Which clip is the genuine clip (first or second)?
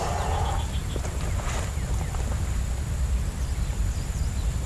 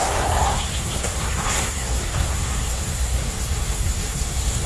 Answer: first